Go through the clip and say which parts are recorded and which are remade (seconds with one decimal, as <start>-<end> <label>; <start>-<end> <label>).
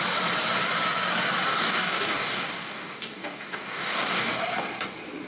0.0-1.5 recorded; 1.5-4.4 remade; 4.4-5.3 recorded